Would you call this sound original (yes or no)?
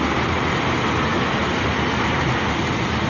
yes